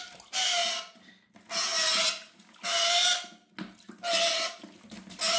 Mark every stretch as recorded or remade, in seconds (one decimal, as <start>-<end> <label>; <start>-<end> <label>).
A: 0.0-5.4 recorded